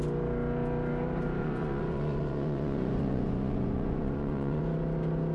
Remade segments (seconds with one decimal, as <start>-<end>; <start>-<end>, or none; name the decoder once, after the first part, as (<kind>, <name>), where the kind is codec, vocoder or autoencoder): 1.4-4.6 (vocoder, Vocos)